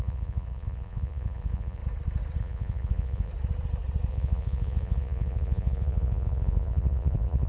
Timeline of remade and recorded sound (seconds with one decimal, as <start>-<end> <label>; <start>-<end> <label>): 0.0-1.8 remade; 1.8-2.4 recorded; 2.4-3.3 remade; 3.3-4.1 recorded; 4.1-7.5 remade